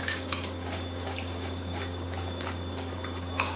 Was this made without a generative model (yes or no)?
no